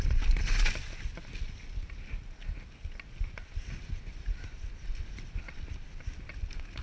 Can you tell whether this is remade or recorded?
recorded